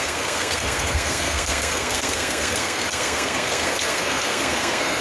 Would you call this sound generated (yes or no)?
yes